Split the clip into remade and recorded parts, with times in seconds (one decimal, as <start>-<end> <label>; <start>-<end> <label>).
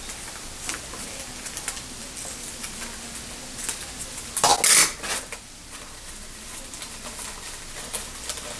0.0-8.6 recorded